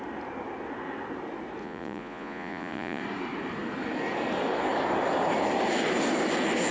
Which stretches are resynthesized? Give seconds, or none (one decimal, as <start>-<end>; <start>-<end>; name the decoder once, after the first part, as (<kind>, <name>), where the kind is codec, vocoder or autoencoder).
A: 1.6-3.0 (vocoder, Vocos)